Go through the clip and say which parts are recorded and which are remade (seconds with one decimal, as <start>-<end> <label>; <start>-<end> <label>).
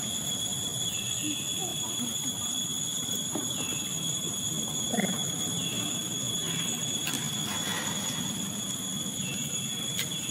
0.0-1.7 recorded; 1.7-2.3 remade; 2.3-10.3 recorded